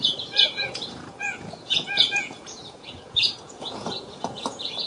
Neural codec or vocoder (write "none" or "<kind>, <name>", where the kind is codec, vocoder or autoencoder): vocoder, Vocos